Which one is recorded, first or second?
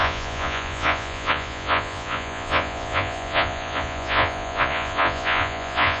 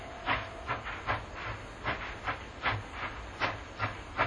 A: second